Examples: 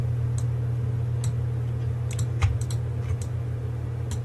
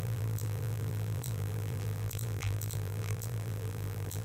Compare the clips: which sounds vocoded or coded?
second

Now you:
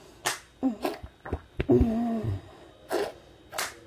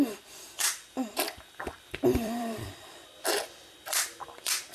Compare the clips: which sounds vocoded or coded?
second